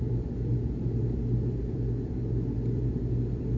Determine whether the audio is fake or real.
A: fake